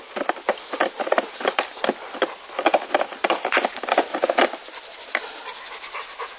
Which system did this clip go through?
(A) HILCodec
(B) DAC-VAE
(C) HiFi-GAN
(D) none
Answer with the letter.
D